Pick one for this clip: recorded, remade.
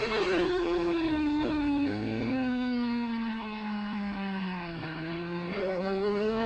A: remade